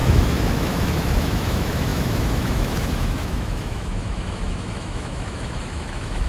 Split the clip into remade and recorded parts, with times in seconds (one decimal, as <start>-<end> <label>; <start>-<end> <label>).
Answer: 0.0-6.3 remade